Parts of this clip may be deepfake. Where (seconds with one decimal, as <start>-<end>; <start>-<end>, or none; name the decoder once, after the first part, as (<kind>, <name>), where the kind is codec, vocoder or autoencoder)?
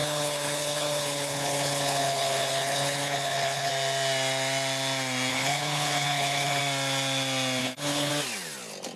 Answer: 0.0-3.7 (codec, HILCodec); 5.3-6.6; 7.6-8.1